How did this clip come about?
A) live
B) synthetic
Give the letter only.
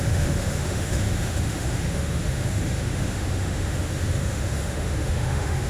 B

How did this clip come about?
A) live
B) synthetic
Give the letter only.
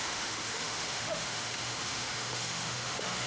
B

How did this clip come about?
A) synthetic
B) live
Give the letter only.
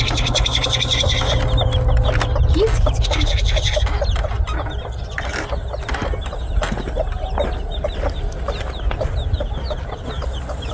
B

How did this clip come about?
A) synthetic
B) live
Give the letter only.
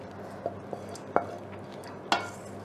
B